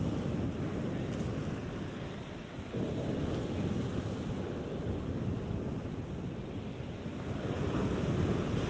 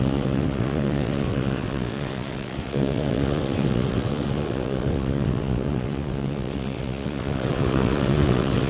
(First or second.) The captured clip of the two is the first